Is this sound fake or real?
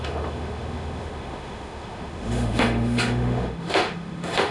fake